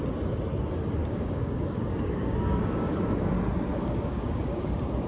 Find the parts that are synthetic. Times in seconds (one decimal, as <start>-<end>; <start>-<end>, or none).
1.0-3.3; 3.7-5.1